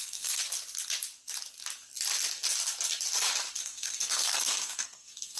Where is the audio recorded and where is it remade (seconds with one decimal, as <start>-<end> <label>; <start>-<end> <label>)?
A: 0.0-0.4 remade; 0.4-3.6 recorded; 3.6-5.4 remade